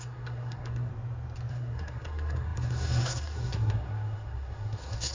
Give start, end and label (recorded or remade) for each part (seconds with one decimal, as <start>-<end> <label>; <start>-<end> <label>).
0.0-0.9 remade; 0.9-1.5 recorded; 1.5-5.1 remade